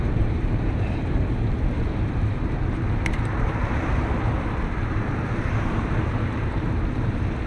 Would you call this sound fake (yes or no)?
yes